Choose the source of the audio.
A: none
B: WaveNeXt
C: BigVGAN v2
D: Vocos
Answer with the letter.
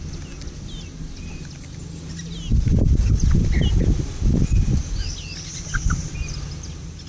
A